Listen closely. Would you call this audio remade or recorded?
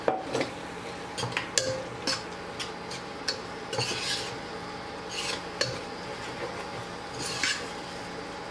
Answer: recorded